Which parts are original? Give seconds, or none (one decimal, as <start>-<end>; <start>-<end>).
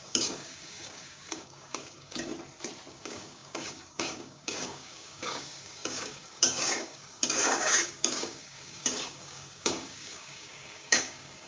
2.3-2.9